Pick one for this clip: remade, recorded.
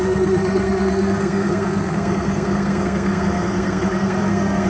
remade